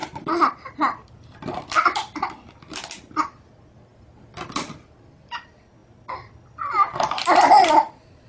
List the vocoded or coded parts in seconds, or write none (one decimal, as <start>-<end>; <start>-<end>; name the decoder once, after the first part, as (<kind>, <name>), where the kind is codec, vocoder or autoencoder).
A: 0.0-2.5 (vocoder, BigVGAN v2); 5.8-7.7